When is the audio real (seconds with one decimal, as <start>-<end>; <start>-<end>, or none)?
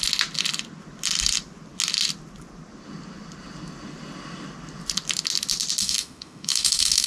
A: 0.0-5.8